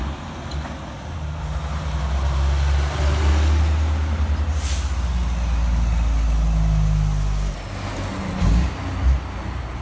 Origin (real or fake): real